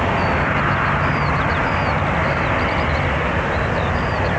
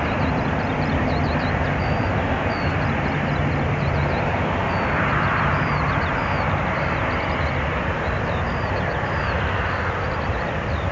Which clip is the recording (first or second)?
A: first